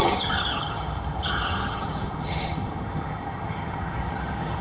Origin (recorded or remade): remade